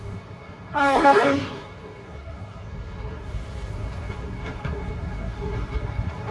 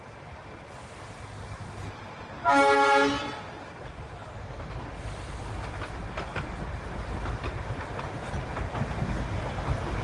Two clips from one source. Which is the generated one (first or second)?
first